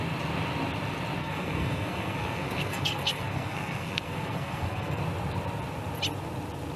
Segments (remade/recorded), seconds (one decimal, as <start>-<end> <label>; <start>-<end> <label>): 0.0-1.2 recorded; 1.2-5.0 remade; 5.0-6.8 recorded